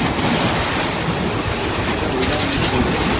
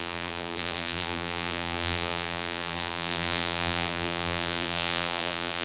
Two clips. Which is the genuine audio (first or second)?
first